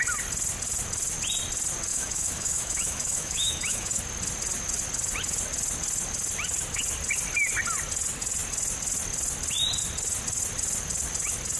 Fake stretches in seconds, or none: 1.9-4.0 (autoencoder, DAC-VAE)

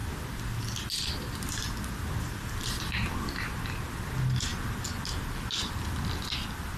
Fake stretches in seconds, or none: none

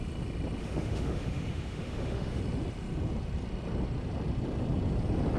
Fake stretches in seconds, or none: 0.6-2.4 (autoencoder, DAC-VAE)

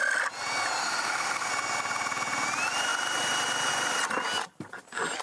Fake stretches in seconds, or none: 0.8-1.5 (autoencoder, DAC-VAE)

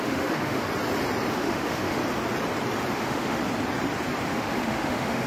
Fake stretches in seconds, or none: 0.0-0.7 (autoencoder, DAC-VAE); 1.3-2.0; 2.9-3.4; 4.3-5.3

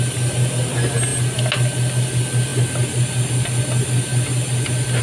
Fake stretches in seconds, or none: none